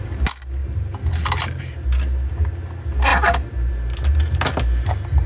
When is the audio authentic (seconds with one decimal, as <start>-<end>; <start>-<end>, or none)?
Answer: 0.0-5.3

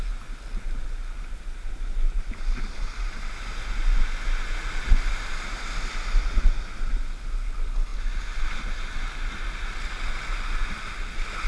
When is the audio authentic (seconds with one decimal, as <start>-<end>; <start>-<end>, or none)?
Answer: 0.0-11.5

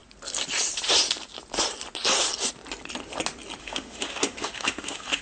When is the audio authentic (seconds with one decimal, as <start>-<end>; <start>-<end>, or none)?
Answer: 0.0-3.6

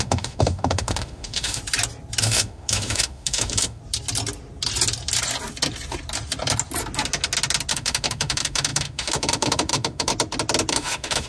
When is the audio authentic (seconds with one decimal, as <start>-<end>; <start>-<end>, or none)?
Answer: 1.6-2.2; 3.8-7.7; 10.1-10.7